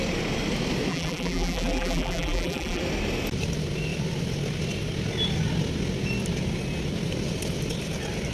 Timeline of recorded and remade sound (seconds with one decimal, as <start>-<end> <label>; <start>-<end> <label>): 0.0-0.9 recorded; 0.9-2.8 remade; 2.8-8.3 recorded

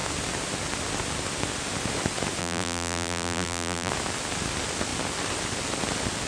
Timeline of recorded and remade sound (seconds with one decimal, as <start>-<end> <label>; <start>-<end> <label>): 0.0-2.4 recorded; 2.4-3.9 remade; 3.9-6.3 recorded